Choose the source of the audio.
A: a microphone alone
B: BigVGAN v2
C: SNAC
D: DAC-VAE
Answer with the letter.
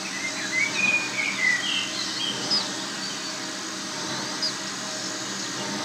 A